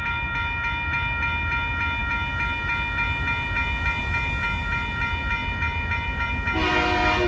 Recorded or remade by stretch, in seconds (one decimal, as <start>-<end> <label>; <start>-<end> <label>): 0.0-7.3 recorded